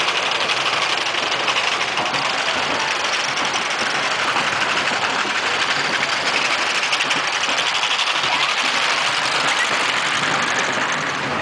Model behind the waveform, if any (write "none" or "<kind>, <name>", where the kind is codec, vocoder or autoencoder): none